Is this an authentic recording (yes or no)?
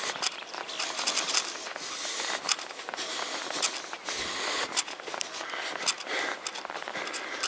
yes